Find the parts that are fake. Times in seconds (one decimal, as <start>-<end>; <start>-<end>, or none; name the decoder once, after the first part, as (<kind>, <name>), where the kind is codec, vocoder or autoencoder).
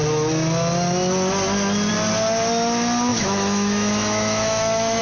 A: 3.1-5.0 (autoencoder, DAC-VAE)